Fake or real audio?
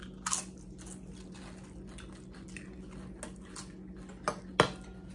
real